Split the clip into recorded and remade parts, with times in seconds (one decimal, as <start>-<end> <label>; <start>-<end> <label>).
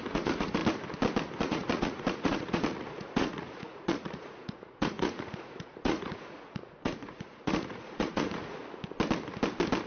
0.0-0.6 remade; 0.6-1.4 recorded; 1.4-8.6 remade; 8.6-9.9 recorded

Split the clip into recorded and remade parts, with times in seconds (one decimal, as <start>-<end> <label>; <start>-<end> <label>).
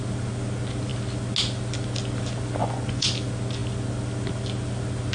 0.0-2.6 recorded; 2.6-3.1 remade; 3.1-5.1 recorded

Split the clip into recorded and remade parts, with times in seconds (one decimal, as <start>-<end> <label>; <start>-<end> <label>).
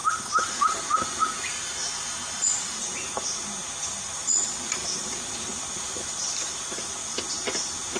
0.0-1.9 remade; 1.9-4.2 recorded; 4.2-6.3 remade; 6.3-7.0 recorded; 7.0-8.0 remade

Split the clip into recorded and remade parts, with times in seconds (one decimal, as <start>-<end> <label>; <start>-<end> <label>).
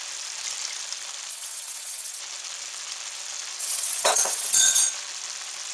0.0-1.3 recorded; 1.3-2.2 remade; 2.2-3.6 recorded; 3.6-4.8 remade; 4.8-5.7 recorded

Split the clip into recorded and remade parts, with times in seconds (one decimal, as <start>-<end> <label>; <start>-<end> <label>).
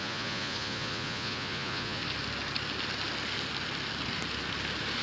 0.0-2.0 remade; 2.0-5.0 recorded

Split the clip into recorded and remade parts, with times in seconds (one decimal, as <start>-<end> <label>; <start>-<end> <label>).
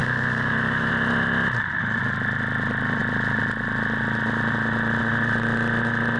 0.0-0.9 remade; 0.9-6.2 recorded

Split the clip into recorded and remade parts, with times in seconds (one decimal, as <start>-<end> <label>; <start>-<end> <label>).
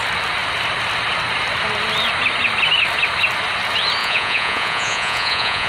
0.0-4.0 recorded; 4.0-5.7 remade